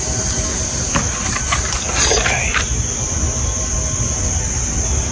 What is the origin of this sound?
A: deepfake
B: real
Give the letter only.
B